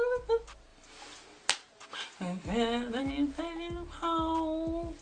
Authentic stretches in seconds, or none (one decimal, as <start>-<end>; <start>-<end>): 0.0-5.0